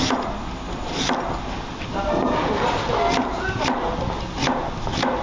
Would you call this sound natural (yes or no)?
yes